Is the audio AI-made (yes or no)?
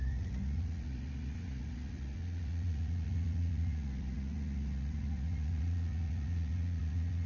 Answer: yes